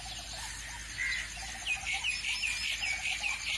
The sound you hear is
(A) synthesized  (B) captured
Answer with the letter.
B